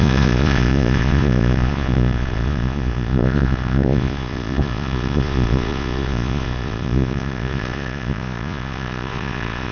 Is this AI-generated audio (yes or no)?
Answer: yes